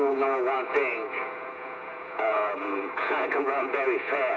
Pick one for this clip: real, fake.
fake